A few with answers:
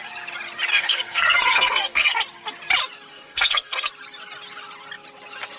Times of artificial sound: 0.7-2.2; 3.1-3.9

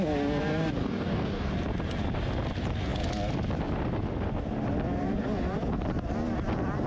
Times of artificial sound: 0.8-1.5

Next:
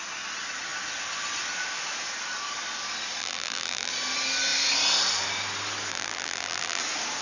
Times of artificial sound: 3.2-3.9; 5.9-6.8

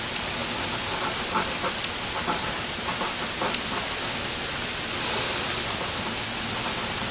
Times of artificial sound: none